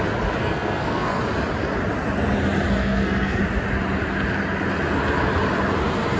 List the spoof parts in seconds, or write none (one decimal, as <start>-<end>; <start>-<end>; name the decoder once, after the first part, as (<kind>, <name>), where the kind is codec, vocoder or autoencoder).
0.4-1.2 (codec, SNAC); 2.8-3.4